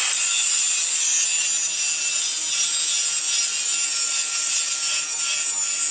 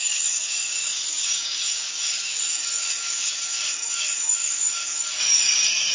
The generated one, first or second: second